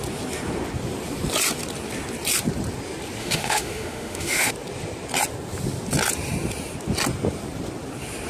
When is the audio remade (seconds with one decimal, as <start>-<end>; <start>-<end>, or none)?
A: 3.2-4.5